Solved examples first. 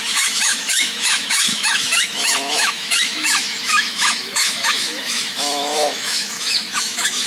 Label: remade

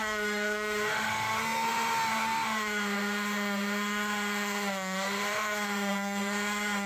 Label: remade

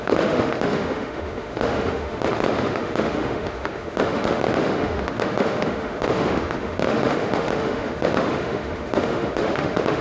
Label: remade